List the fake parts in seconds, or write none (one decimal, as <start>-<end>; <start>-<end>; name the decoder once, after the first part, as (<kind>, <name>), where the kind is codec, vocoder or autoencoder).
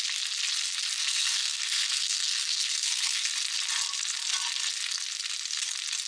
1.0-3.3 (codec, SNAC)